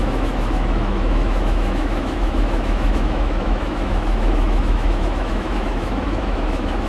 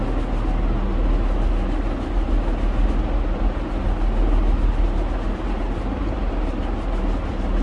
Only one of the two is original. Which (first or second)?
second